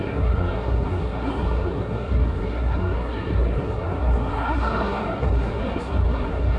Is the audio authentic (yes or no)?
no